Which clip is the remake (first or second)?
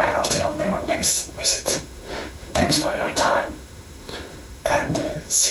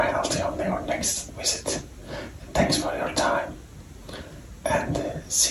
first